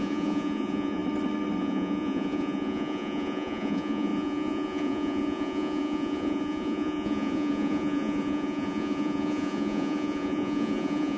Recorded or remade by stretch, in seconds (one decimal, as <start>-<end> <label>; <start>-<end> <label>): 0.0-1.0 remade; 1.0-1.6 recorded; 1.6-11.2 remade

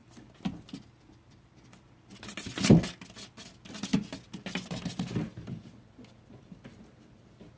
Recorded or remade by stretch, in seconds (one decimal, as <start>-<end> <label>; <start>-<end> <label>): 0.0-7.6 recorded